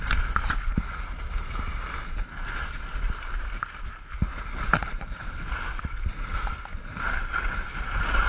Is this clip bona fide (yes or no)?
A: yes